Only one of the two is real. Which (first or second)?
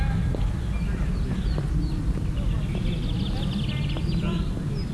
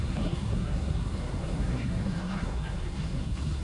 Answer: first